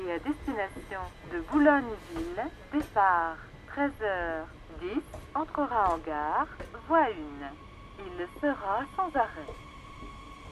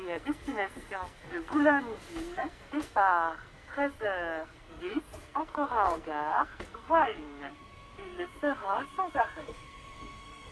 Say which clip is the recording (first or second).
first